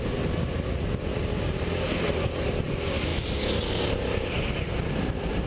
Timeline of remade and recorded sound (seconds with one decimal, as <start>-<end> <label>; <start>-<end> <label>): 0.0-5.5 recorded